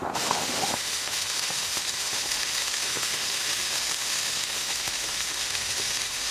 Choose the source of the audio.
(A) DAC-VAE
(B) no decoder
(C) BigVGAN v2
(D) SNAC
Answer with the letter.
A